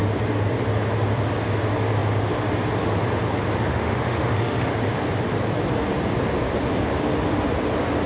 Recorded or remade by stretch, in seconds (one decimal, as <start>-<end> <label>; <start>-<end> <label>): 0.0-3.7 recorded; 3.7-4.7 remade; 4.7-8.1 recorded